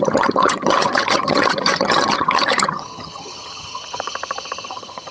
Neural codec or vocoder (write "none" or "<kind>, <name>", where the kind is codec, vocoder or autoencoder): vocoder, HiFi-GAN